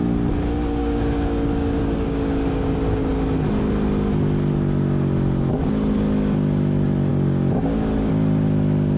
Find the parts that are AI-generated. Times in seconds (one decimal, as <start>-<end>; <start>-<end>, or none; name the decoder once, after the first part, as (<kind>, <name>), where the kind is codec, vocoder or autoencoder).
0.8-3.1 (codec, DAC); 7.1-8.1